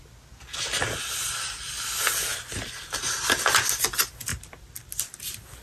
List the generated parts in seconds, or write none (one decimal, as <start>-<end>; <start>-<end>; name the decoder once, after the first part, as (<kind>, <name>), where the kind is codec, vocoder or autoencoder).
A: none